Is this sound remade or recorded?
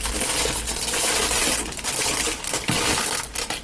recorded